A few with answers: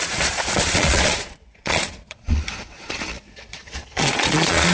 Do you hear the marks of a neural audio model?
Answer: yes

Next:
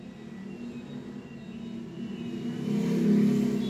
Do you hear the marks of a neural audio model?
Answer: no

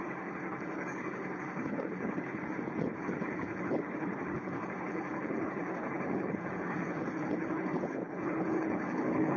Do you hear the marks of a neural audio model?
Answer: yes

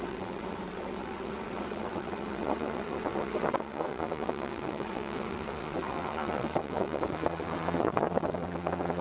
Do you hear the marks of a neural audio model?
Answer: yes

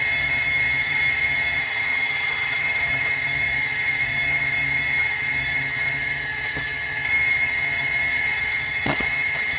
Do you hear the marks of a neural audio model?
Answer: yes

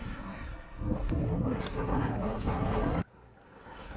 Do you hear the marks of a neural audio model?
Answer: yes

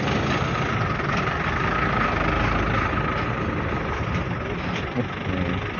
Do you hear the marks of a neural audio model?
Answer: no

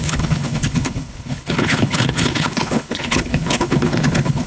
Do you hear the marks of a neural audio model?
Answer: yes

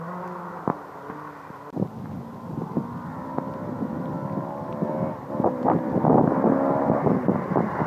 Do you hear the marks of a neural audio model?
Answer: no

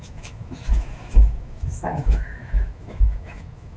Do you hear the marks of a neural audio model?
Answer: yes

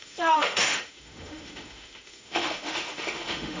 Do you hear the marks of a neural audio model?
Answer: yes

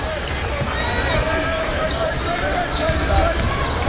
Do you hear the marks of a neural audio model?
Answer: no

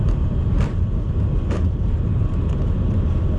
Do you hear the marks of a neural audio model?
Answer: yes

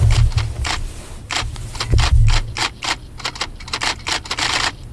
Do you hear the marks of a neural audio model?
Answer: no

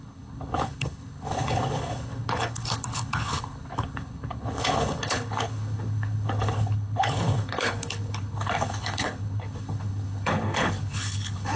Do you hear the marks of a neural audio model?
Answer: yes